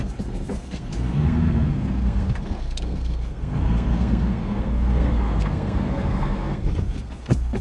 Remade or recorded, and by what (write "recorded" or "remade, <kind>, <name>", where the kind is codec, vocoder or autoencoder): remade, codec, SNAC